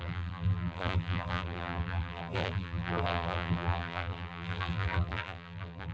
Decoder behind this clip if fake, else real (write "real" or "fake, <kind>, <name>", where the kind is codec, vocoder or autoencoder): fake, vocoder, BigVGAN v2